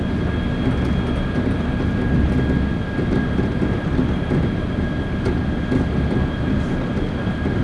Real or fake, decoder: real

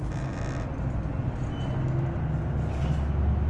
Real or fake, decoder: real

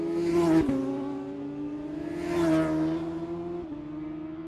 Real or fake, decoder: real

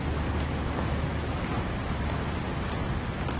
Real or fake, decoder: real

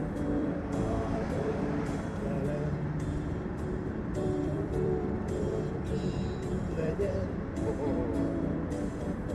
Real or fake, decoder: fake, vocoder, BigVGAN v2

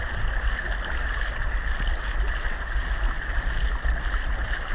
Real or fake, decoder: real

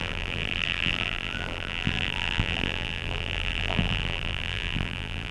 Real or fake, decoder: fake, vocoder, BigVGAN v2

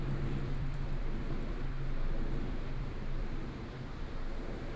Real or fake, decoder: fake, vocoder, BigVGAN v2